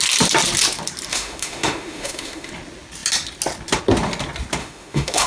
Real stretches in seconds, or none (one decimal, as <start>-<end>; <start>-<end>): 0.0-1.1; 2.5-4.6